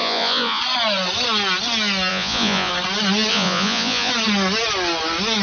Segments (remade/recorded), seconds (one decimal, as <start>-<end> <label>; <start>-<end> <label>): 0.0-0.6 remade; 0.6-2.1 recorded; 2.1-2.7 remade; 2.7-3.3 recorded; 3.3-4.1 remade; 4.1-5.4 recorded